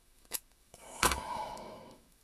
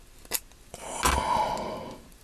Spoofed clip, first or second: first